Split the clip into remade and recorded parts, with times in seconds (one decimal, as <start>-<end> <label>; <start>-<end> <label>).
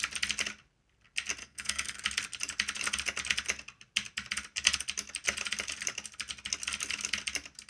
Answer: 0.0-1.4 recorded; 1.4-2.0 remade; 2.0-7.7 recorded